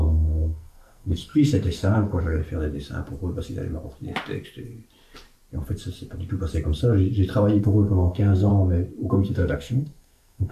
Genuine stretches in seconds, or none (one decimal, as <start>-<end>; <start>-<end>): 2.4-7.6; 8.5-9.1